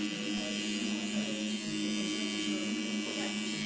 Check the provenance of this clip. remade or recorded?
recorded